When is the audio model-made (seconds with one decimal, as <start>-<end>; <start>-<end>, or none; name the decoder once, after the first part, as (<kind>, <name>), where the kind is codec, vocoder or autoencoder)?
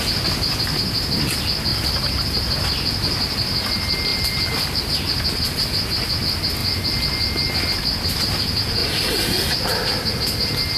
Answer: 1.7-2.2 (vocoder, BigVGAN v2); 4.1-4.8; 8.8-10.1